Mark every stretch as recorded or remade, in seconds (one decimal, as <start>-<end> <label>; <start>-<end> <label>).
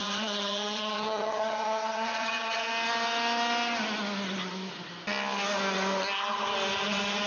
0.0-2.7 remade; 2.7-7.3 recorded